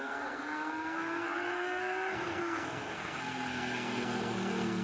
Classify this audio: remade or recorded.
remade